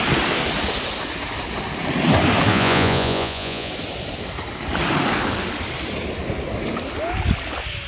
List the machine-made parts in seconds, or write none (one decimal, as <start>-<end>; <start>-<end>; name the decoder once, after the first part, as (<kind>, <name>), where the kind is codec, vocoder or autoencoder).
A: 2.5-3.7 (vocoder, Vocos)